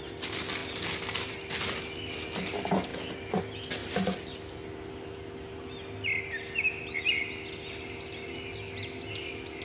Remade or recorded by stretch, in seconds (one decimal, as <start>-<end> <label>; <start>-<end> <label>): 0.0-9.6 recorded